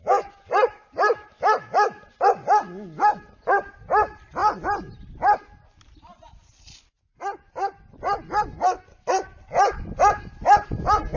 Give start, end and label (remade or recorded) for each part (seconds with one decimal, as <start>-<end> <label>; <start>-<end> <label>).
0.0-11.2 recorded

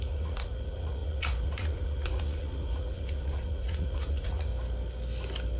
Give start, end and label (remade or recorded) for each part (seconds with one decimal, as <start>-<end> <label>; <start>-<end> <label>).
0.0-4.5 remade; 4.5-5.6 recorded

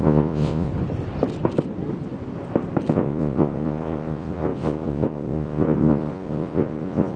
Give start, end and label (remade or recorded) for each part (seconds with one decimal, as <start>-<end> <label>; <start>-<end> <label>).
0.0-0.7 remade; 0.7-2.9 recorded; 2.9-7.2 remade

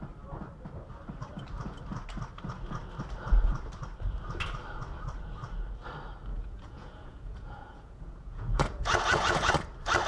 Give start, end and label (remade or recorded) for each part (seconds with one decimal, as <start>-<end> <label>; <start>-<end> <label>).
0.0-6.3 recorded; 6.3-9.5 remade; 9.5-10.1 recorded

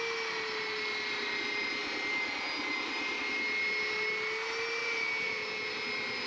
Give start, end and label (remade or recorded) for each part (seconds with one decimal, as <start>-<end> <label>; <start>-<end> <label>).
0.0-4.8 recorded; 4.8-5.7 remade; 5.7-6.3 recorded

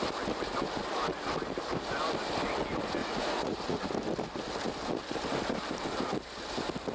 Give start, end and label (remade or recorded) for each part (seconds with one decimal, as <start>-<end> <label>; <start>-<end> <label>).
0.0-3.0 recorded; 3.0-3.8 remade; 3.8-6.9 recorded